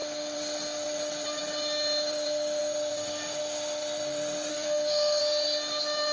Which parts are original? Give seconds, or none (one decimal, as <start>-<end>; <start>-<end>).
0.0-4.5; 5.2-6.1